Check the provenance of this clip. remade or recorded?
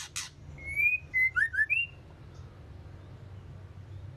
recorded